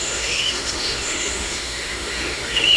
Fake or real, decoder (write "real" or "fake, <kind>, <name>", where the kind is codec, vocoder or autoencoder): fake, autoencoder, DAC-VAE